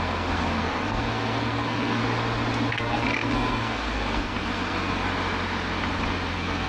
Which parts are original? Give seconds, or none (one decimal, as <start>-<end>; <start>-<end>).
2.0-2.7; 5.1-6.3